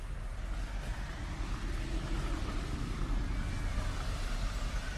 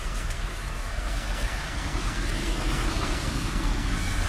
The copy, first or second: second